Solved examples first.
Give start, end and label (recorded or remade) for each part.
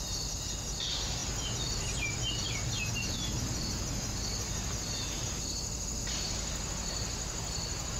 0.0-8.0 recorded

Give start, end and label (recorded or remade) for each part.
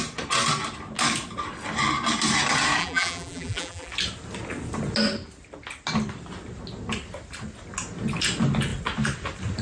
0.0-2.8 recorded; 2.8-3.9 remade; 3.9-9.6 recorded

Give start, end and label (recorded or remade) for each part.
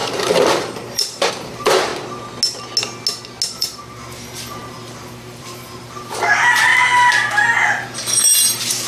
0.0-1.9 remade; 1.9-3.5 recorded; 3.5-6.7 remade; 6.7-7.3 recorded; 7.3-8.9 remade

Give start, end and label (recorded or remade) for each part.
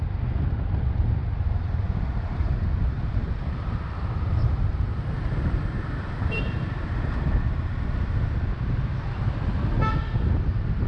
0.0-1.2 recorded; 1.2-3.7 remade; 3.7-4.4 recorded; 4.4-7.4 remade; 7.4-10.9 recorded